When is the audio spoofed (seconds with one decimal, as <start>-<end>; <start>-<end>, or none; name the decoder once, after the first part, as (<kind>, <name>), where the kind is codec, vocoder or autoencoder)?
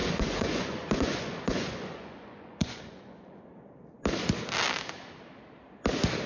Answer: 0.0-3.4 (vocoder, Vocos)